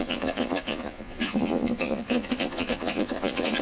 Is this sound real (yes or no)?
no